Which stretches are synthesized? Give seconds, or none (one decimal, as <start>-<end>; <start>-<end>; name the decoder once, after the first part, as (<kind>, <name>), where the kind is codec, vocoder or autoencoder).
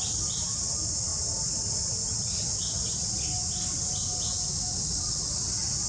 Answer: 4.7-5.9 (vocoder, WaveNeXt)